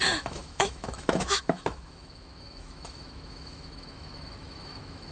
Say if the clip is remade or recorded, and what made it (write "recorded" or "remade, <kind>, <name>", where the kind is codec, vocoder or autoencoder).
remade, autoencoder, DAC-VAE